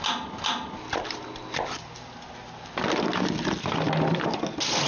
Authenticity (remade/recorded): recorded